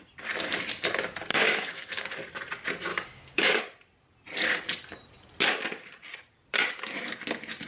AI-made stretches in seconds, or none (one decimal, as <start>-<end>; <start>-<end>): 1.3-2.2; 2.9-3.6